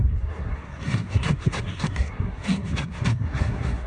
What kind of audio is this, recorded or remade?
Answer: remade